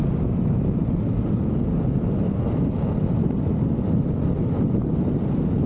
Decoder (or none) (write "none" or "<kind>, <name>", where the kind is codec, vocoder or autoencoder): none